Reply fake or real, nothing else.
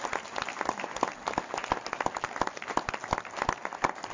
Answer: real